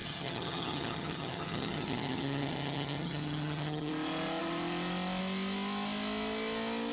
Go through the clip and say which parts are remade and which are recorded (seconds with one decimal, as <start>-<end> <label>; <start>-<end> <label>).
0.0-3.9 remade; 3.9-6.9 recorded